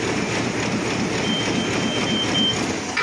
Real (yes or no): yes